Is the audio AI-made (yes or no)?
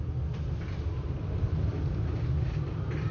no